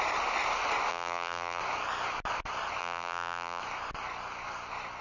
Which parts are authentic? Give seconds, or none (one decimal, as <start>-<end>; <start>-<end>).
0.0-0.9; 1.6-2.8; 3.6-5.0